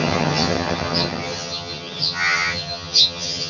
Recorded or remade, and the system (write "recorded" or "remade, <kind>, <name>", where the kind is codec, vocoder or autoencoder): remade, vocoder, HiFi-GAN